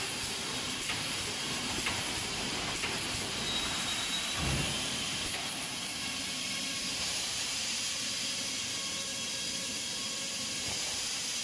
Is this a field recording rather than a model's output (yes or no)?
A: no